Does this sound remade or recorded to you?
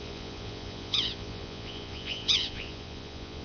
remade